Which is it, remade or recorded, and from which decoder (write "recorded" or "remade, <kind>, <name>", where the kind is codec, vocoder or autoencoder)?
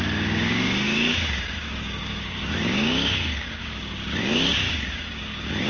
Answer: remade, codec, DAC